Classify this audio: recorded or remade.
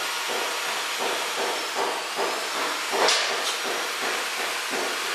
recorded